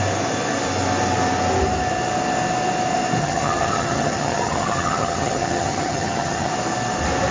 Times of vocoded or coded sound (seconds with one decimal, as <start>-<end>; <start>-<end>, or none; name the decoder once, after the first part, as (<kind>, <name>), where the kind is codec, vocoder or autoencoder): 3.2-6.5 (vocoder, HiFi-GAN)